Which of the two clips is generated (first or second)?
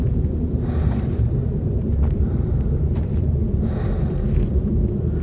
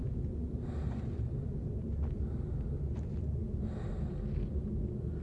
first